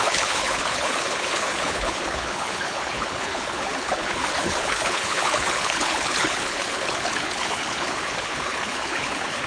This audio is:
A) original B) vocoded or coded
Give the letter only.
B